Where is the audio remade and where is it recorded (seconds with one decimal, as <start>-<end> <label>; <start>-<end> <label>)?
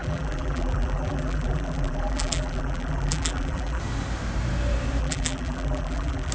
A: 0.0-3.8 remade; 3.8-5.0 recorded; 5.0-6.3 remade